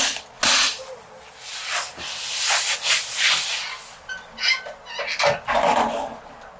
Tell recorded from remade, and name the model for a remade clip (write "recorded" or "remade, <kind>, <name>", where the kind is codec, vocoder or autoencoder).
recorded